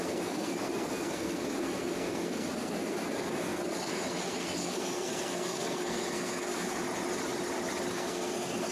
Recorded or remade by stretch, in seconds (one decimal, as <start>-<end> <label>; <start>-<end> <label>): 0.0-6.8 remade; 6.8-7.9 recorded; 7.9-8.7 remade